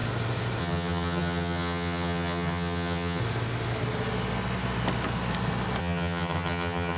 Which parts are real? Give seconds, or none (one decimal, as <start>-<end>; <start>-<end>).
0.0-0.6; 3.2-5.8